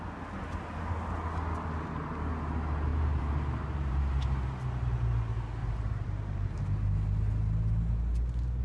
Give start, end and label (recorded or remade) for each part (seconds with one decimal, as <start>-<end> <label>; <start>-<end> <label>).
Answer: 0.0-2.9 recorded; 2.9-4.0 remade; 4.0-5.6 recorded; 5.6-6.6 remade; 6.6-8.6 recorded